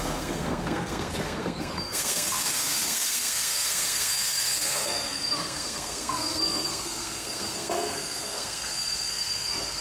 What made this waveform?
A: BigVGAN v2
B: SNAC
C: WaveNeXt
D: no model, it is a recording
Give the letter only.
B